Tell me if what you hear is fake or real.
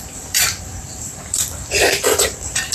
fake